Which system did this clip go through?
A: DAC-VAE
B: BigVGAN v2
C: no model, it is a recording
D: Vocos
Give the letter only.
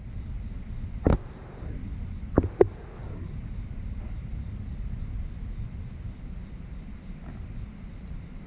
C